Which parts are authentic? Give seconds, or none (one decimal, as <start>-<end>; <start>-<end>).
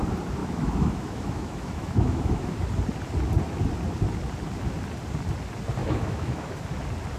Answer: 0.0-0.4; 2.6-5.8; 6.6-7.2